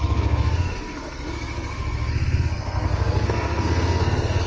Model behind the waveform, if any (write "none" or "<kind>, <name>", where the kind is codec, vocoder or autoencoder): codec, SNAC